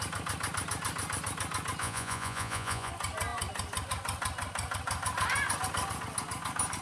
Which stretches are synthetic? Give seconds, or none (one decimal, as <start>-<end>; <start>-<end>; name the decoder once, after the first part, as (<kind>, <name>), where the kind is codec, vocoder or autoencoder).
1.8-2.9 (vocoder, Vocos)